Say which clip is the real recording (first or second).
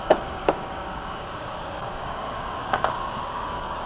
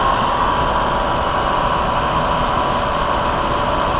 second